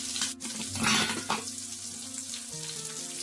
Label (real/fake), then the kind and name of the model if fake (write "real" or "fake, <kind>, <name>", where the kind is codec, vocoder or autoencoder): real